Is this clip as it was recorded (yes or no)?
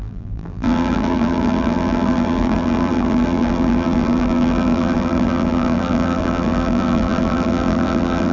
no